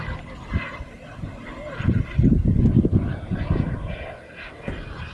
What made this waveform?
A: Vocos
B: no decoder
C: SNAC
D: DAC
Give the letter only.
B